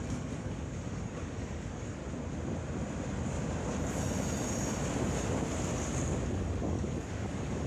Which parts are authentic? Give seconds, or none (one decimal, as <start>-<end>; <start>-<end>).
2.0-6.3